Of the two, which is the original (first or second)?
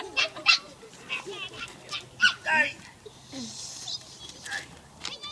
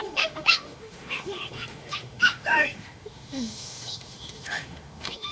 first